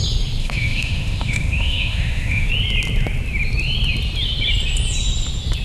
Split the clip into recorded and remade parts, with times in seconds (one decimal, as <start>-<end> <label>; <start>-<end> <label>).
0.0-0.4 recorded; 0.4-2.5 remade; 2.5-5.6 recorded